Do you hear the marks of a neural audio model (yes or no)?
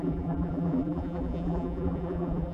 yes